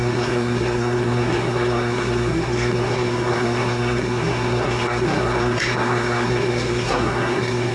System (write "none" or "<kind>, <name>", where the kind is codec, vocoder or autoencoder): codec, SNAC